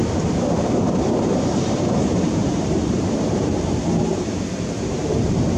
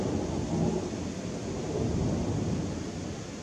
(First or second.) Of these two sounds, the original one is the second